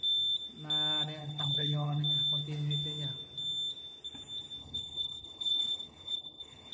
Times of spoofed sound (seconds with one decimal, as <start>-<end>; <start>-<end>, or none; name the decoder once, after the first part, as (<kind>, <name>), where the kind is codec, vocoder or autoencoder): 1.2-2.0 (codec, HILCodec); 4.6-6.7